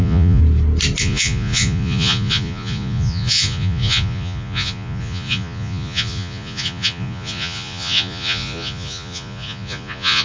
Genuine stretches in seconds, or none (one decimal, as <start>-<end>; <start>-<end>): 0.4-1.0